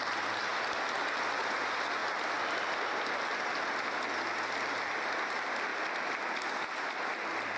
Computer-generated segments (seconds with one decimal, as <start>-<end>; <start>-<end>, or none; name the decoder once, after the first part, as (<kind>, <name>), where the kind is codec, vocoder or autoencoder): none